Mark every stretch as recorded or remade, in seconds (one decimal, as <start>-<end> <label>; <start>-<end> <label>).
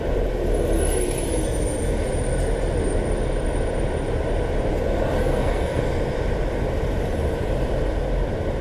0.0-5.2 recorded; 5.2-5.8 remade; 5.8-8.6 recorded